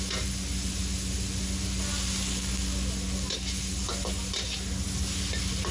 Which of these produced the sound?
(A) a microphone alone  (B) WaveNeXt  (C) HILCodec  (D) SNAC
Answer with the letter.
A